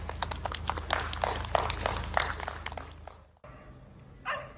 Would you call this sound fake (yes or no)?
no